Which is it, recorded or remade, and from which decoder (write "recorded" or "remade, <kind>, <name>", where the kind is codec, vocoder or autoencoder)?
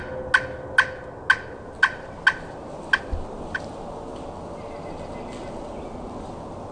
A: recorded